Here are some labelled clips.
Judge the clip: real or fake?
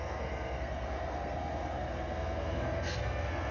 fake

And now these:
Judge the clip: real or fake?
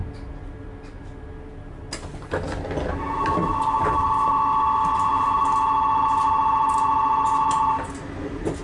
real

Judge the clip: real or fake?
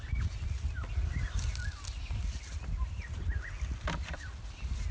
real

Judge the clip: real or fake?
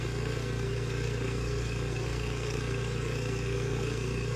fake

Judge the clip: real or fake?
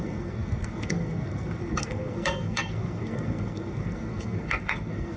fake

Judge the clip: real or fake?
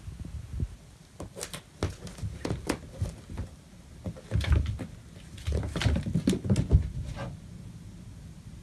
real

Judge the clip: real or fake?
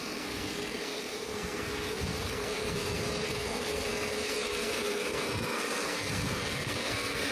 fake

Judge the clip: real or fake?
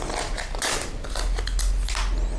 real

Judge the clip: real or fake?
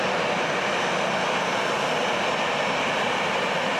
real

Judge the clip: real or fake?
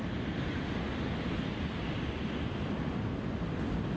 real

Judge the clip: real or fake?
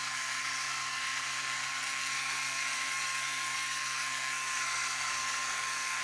fake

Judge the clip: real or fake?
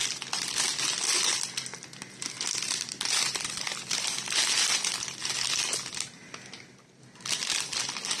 real